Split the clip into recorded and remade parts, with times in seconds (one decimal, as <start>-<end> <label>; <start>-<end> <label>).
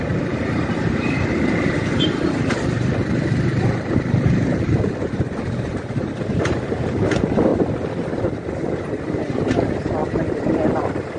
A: 0.0-7.5 remade; 7.5-8.8 recorded; 8.8-10.0 remade; 10.0-10.6 recorded; 10.6-11.2 remade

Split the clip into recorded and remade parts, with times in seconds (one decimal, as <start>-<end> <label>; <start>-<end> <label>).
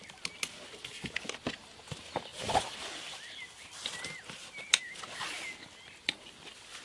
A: 0.0-6.8 recorded